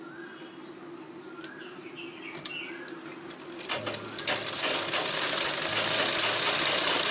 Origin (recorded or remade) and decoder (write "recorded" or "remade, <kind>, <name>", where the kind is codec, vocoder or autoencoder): recorded